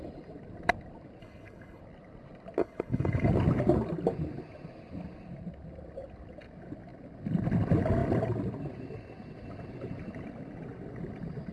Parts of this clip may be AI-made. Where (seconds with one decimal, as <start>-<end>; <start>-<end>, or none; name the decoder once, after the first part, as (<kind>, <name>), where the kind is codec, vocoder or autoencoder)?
1.2-1.8 (codec, HILCodec); 2.6-3.3

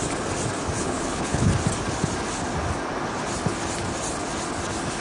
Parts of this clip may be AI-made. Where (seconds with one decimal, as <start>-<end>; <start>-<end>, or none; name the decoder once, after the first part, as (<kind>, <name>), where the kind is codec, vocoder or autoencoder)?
0.8-1.5 (codec, HILCodec)

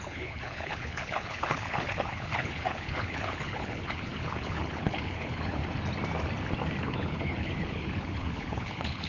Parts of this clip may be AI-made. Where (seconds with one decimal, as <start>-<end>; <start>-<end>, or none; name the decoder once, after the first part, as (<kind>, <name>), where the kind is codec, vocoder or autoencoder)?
0.0-5.6 (codec, HILCodec); 6.8-9.1

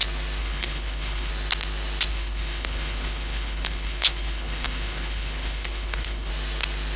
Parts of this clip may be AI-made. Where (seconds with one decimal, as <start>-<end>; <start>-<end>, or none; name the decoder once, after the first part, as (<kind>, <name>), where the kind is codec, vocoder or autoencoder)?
0.4-1.3 (codec, HILCodec); 2.1-6.3

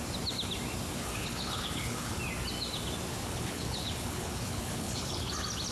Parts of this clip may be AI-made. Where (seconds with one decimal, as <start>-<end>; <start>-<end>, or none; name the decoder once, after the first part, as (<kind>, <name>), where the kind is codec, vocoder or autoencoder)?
0.9-2.2 (codec, HILCodec); 3.1-5.3